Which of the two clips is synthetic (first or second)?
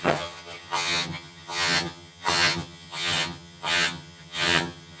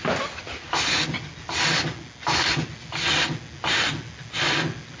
first